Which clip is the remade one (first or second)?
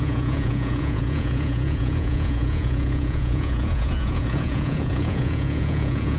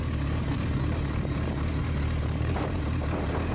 first